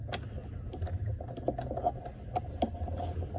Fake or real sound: real